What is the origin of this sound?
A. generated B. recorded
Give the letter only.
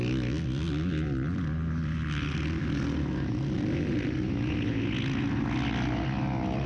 B